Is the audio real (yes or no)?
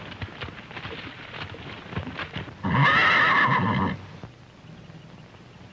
yes